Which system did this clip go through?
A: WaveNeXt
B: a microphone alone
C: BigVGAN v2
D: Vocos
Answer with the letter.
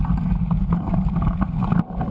B